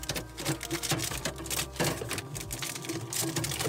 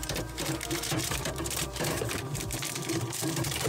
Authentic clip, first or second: first